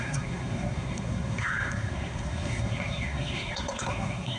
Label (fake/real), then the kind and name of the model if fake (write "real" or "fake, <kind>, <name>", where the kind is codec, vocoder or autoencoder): fake, codec, SNAC